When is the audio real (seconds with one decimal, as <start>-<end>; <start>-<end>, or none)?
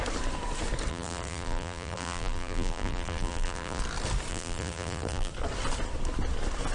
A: 0.0-0.9; 3.8-4.3; 5.3-6.7